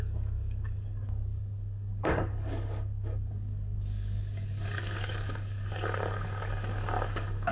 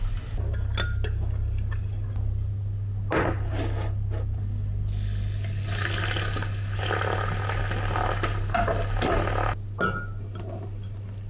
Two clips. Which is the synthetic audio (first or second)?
first